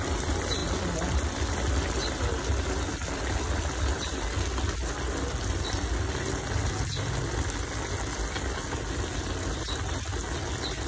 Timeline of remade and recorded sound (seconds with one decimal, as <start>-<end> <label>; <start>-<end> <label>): 0.0-10.9 recorded